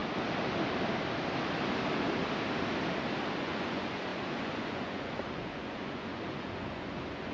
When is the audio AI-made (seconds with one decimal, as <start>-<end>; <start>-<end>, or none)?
3.4-7.3